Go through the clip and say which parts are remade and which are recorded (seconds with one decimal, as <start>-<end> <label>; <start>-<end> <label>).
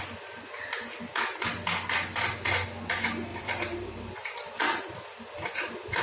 0.0-3.3 recorded; 3.3-6.0 remade